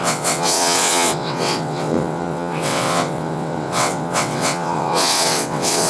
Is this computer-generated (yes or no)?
yes